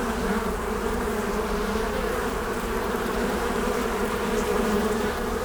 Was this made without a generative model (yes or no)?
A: no